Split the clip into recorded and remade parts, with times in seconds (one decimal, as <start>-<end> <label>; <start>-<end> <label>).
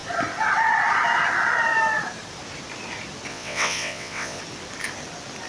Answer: 0.0-3.3 recorded; 3.3-4.4 remade; 4.4-5.5 recorded